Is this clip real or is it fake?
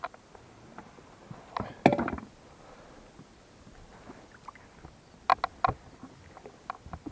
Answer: real